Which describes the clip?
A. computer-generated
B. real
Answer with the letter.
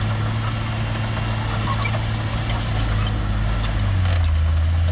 B